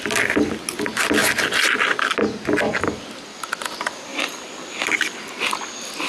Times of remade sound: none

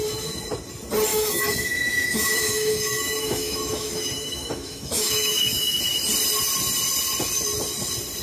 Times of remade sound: 1.1-5.8 (autoencoder, DAC-VAE)

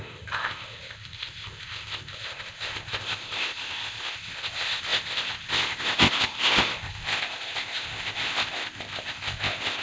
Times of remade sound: 0.0-9.8 (codec, ZipCodec)

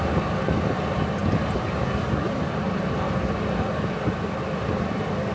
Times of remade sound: 1.2-1.7 (vocoder, BigVGAN v2)

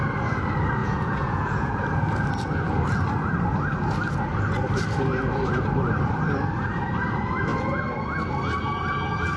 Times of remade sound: 0.8-1.7 (vocoder, Vocos)

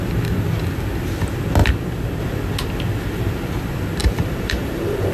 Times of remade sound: 4.0-5.1 (vocoder, BigVGAN v2)

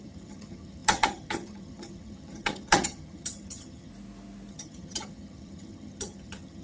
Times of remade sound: 0.0-3.9 (vocoder, HiFi-GAN); 4.5-6.6